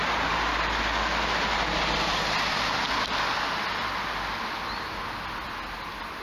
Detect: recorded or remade recorded